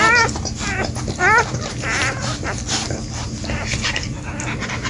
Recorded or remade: recorded